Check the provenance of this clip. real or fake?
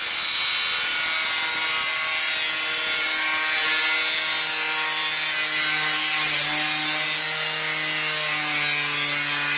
real